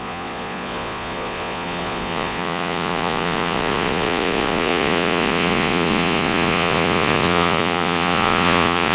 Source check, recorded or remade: remade